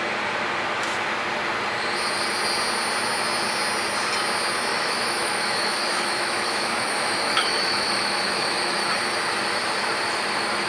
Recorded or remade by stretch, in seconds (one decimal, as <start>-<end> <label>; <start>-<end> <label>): 0.0-4.7 recorded; 4.7-8.9 remade; 8.9-10.7 recorded

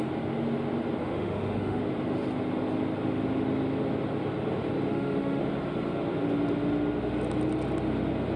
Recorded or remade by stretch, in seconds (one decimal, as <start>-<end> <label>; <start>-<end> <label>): 0.0-1.0 recorded; 1.0-1.8 remade; 1.8-4.9 recorded; 4.9-5.4 remade; 5.4-8.4 recorded

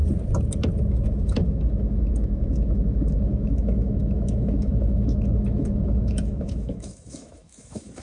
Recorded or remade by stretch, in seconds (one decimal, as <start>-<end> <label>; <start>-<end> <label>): 0.0-0.9 recorded; 0.9-8.0 remade

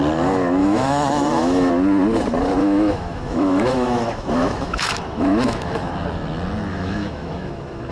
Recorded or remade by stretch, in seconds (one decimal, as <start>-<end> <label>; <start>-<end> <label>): 0.0-0.6 recorded; 0.6-1.7 remade; 1.7-2.6 recorded; 2.6-5.9 remade; 5.9-6.7 recorded; 6.7-7.9 remade